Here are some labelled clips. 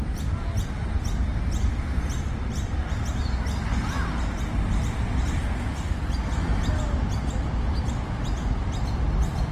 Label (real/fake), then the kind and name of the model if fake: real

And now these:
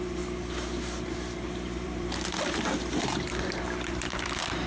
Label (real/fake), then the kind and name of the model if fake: fake, vocoder, BigVGAN v2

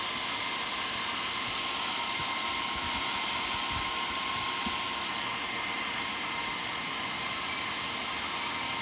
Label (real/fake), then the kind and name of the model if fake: real